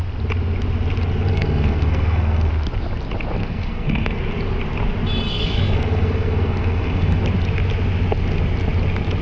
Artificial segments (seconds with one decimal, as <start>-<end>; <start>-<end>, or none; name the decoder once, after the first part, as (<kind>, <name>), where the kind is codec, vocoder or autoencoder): 1.3-2.5 (codec, SNAC); 3.4-4.2; 5.3-7.2